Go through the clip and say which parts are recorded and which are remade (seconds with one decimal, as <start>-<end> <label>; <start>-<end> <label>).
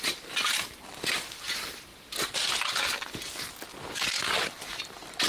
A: 0.0-3.7 recorded; 3.7-4.8 remade; 4.8-5.3 recorded